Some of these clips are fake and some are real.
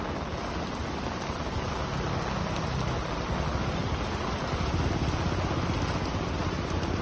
real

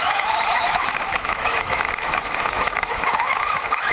fake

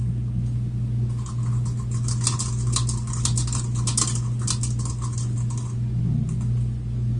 real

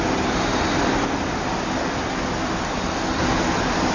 real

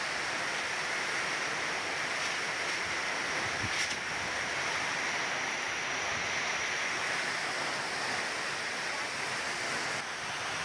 real